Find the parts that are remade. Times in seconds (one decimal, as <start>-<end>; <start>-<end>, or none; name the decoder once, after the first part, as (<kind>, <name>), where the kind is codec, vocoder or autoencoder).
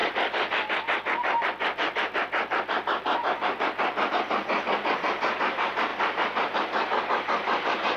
0.0-4.1 (vocoder, BigVGAN v2)